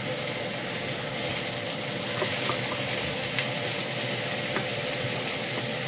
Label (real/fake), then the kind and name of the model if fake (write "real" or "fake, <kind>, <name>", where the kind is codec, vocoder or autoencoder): fake, vocoder, BigVGAN v2